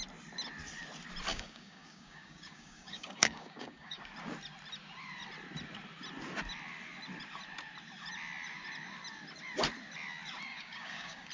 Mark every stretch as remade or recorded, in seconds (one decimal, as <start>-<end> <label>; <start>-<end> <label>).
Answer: 0.0-1.3 recorded; 1.3-4.0 remade; 4.0-10.5 recorded; 10.5-11.3 remade

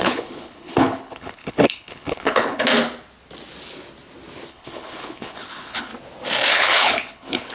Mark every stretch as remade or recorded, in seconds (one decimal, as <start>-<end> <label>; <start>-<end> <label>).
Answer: 0.0-2.7 remade; 2.7-4.5 recorded; 4.5-5.9 remade; 5.9-6.5 recorded; 6.5-7.5 remade

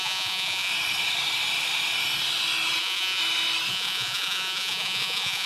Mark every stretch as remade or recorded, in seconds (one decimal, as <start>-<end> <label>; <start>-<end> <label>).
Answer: 0.0-0.7 remade; 0.7-2.8 recorded; 2.8-3.2 remade; 3.2-3.7 recorded; 3.7-5.5 remade

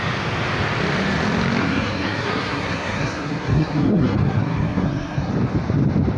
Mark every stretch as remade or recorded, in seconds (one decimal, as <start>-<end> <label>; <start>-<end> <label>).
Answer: 0.0-1.6 recorded; 1.6-5.3 remade; 5.3-6.2 recorded